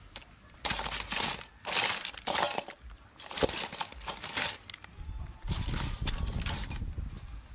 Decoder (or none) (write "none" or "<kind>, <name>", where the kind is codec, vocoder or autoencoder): none